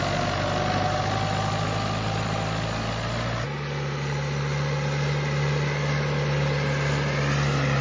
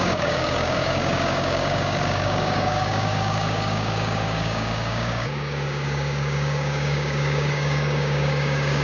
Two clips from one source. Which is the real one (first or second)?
first